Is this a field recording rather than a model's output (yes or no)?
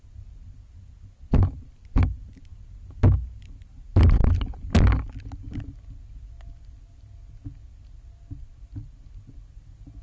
yes